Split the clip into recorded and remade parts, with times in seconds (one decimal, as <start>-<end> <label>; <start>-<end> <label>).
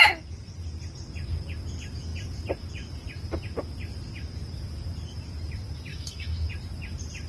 0.0-5.9 recorded; 5.9-6.5 remade; 6.5-7.3 recorded